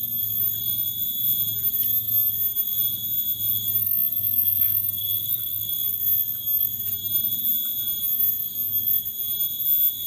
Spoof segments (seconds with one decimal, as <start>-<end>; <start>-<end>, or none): 3.8-5.7

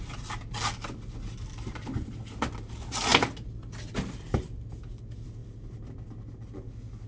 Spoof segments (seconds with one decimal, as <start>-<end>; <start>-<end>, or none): none